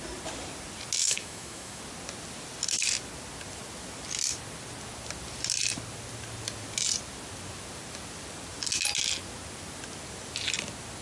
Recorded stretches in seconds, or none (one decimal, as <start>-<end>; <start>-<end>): 0.0-1.0; 1.8-11.0

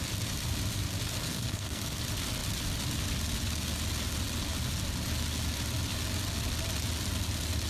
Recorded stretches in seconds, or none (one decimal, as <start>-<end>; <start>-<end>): 0.0-1.2; 2.0-7.7

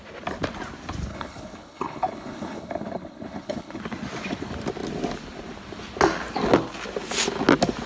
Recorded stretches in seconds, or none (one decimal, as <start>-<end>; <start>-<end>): 0.0-1.1; 3.8-7.9

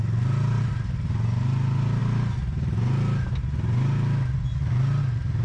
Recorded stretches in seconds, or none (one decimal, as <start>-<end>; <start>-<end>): 0.0-5.4

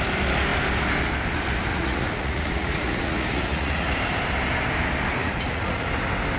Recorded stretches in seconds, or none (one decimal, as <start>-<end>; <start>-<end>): 0.0-1.7; 3.9-5.2; 5.9-6.4

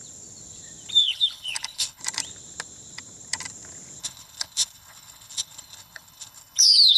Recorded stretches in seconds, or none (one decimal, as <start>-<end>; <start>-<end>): 0.0-1.0; 2.0-4.0

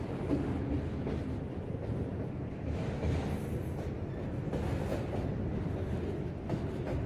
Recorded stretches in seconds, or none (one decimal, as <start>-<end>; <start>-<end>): 0.0-2.1; 3.1-4.9; 6.5-7.1